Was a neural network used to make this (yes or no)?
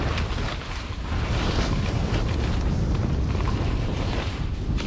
no